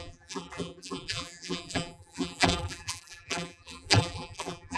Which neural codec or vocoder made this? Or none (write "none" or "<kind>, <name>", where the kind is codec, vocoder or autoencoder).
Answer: vocoder, BigVGAN v2